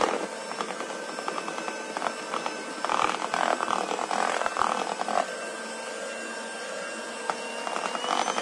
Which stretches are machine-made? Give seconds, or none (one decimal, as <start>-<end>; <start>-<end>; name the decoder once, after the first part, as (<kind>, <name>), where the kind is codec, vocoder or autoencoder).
none